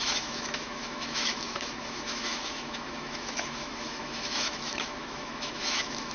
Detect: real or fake fake